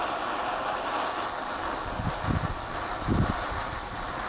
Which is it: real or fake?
real